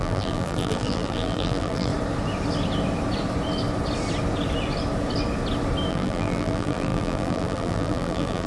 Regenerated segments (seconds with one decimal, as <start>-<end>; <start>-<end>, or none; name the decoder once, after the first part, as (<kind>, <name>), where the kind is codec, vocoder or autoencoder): 0.0-1.9 (vocoder, BigVGAN v2); 5.9-8.5